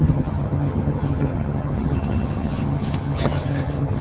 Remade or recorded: remade